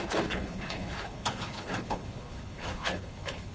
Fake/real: fake